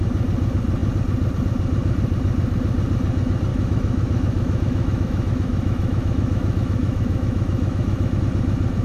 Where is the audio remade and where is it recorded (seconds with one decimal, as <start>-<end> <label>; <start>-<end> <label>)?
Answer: 0.0-3.5 recorded; 3.5-8.2 remade; 8.2-8.8 recorded